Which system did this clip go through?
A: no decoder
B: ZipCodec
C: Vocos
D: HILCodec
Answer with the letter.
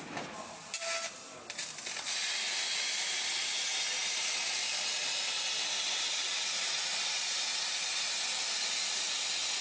A